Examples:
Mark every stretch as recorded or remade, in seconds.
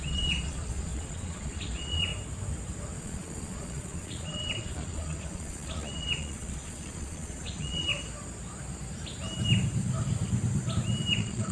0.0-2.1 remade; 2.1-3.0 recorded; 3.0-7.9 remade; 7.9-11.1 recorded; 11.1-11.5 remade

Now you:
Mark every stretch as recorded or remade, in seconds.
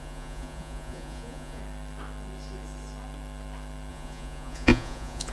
0.0-1.6 remade; 1.6-3.9 recorded; 3.9-5.3 remade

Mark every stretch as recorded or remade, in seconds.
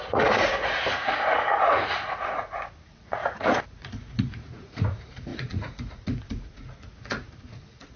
0.0-8.0 remade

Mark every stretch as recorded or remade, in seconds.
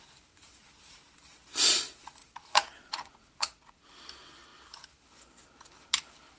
0.0-2.2 recorded; 2.2-3.8 remade; 3.8-6.4 recorded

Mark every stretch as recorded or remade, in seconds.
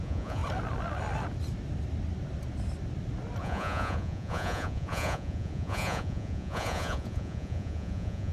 0.0-0.4 remade; 0.4-3.4 recorded; 3.4-8.3 remade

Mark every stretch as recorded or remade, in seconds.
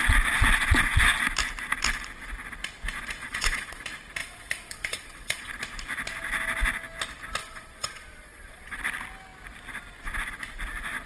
0.0-3.2 recorded; 3.2-3.8 remade; 3.8-4.2 recorded; 4.2-5.5 remade; 5.5-7.4 recorded; 7.4-8.8 remade; 8.8-11.1 recorded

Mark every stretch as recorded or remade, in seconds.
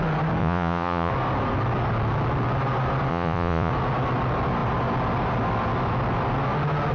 0.0-0.4 recorded; 0.4-1.1 remade; 1.1-3.1 recorded; 3.1-3.7 remade; 3.7-6.9 recorded